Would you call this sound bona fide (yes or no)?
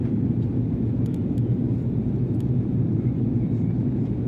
yes